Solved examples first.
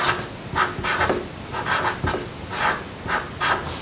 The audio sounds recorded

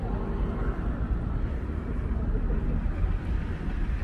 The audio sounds recorded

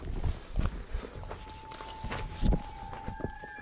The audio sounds recorded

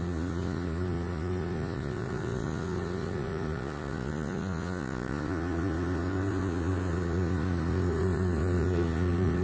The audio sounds remade